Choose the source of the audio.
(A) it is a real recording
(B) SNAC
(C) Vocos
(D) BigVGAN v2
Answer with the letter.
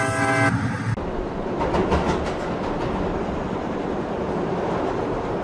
A